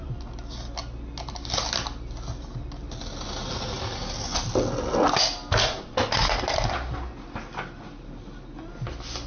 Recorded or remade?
recorded